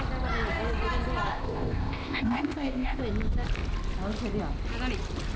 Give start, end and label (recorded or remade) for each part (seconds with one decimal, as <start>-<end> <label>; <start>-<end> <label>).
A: 0.0-1.3 recorded; 1.3-3.0 remade; 3.0-5.4 recorded